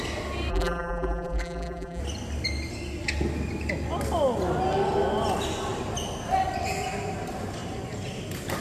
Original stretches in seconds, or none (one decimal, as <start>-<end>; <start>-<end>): 0.0-0.5; 2.0-8.6